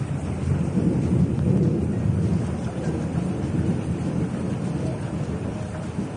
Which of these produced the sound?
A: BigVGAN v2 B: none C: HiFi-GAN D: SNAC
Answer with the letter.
A